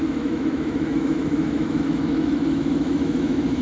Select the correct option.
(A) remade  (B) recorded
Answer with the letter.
A